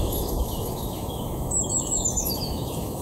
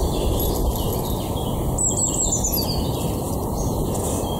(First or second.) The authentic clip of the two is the second